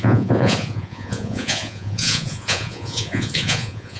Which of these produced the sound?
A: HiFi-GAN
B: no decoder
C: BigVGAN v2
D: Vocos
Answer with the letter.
D